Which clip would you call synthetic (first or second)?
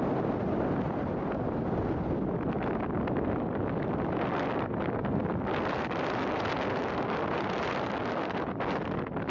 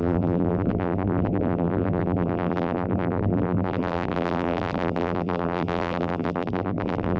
second